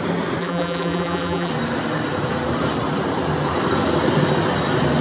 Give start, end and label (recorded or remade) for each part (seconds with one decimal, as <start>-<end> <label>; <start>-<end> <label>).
0.0-0.4 recorded; 0.4-1.5 remade; 1.5-5.0 recorded